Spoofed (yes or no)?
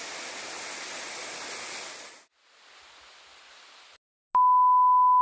no